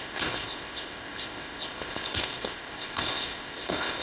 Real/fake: fake